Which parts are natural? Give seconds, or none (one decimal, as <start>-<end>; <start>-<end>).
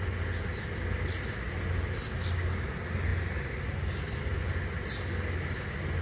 0.0-6.0